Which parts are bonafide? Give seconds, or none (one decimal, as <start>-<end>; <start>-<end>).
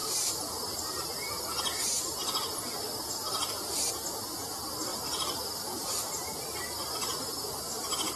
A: 0.0-8.2